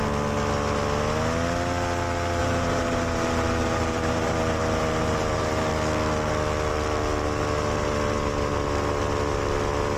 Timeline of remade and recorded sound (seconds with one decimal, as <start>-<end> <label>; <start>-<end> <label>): 0.0-2.4 recorded; 2.4-5.7 remade; 5.7-10.0 recorded